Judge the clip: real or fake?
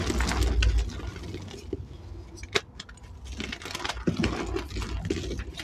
real